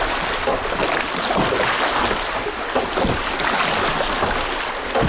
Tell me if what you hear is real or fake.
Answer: real